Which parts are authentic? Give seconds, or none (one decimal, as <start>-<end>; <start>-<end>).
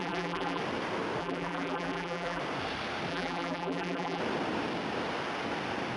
0.6-1.2; 2.4-3.1; 4.2-6.0